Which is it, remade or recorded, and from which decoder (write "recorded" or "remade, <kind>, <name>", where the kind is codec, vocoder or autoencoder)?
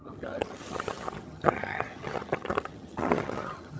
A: remade, vocoder, HiFi-GAN